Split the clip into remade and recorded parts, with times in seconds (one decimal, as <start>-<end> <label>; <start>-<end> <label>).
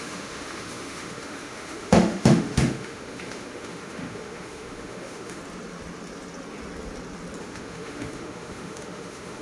0.0-5.4 remade; 5.4-7.4 recorded; 7.4-9.4 remade